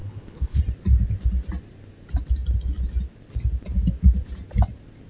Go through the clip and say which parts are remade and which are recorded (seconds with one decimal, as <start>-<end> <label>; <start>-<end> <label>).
0.0-0.6 remade; 0.6-5.1 recorded